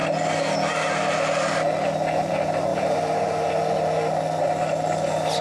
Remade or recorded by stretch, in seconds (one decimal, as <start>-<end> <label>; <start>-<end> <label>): 0.0-2.7 recorded; 2.7-3.5 remade; 3.5-5.4 recorded